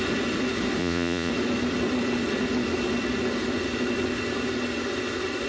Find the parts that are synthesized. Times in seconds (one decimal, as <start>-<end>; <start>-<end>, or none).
0.8-1.3